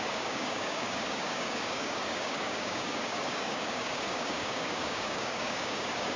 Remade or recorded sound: remade